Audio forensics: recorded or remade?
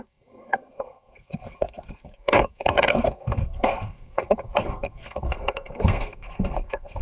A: remade